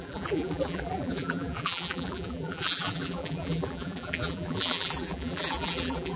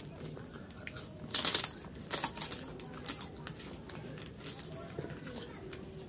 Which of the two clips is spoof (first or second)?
first